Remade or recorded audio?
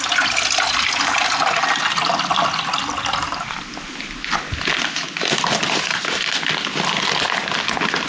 recorded